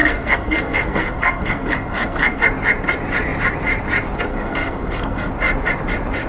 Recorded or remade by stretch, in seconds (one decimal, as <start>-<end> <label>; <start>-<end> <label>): 0.0-2.4 remade; 2.4-4.3 recorded; 4.3-5.3 remade; 5.3-6.3 recorded